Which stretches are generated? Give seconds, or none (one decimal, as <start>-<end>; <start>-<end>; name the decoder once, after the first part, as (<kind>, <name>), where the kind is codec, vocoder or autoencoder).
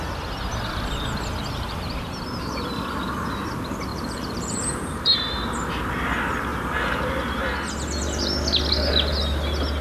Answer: 3.9-5.7 (vocoder, BigVGAN v2)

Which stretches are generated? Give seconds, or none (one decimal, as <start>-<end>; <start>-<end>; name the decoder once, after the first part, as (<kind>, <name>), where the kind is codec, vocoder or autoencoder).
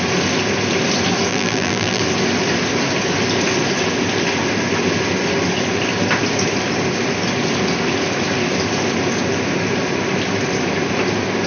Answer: 1.3-2.0 (vocoder, BigVGAN v2)